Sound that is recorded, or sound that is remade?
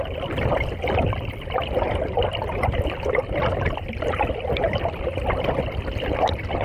recorded